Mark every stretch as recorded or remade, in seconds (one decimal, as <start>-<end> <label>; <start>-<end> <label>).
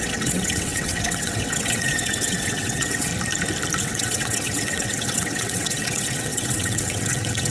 0.0-3.1 remade; 3.1-3.8 recorded; 3.8-7.5 remade